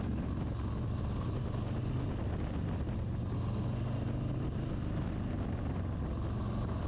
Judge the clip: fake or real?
real